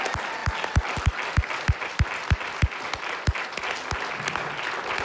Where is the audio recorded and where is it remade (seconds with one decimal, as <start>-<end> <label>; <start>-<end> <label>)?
0.0-5.0 recorded